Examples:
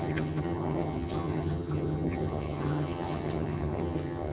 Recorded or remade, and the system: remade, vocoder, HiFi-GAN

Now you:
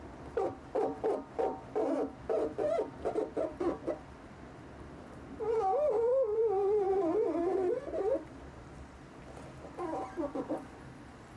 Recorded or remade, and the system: remade, vocoder, BigVGAN v2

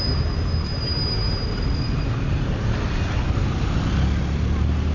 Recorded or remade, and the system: recorded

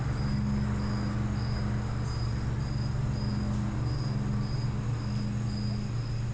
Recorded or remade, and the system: recorded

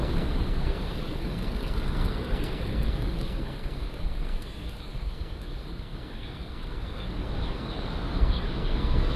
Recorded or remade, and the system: remade, codec, SNAC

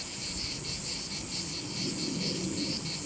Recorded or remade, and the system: recorded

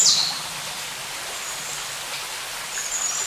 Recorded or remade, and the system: recorded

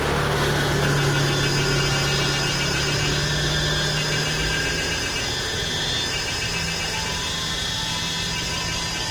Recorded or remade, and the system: recorded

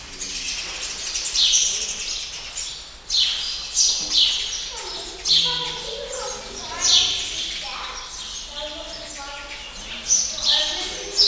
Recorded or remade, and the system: recorded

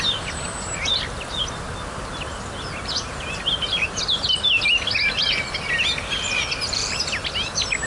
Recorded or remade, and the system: recorded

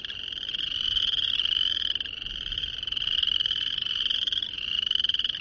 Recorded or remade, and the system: recorded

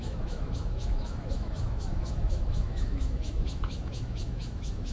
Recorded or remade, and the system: remade, autoencoder, DAC-VAE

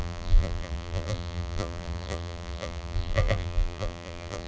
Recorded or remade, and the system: remade, vocoder, BigVGAN v2